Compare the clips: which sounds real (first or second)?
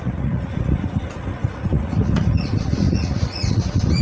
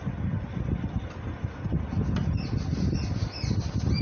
second